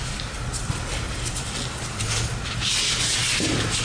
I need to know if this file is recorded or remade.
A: recorded